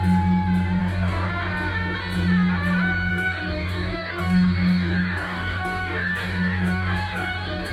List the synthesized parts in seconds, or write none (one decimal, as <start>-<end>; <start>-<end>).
0.8-1.3; 3.1-7.7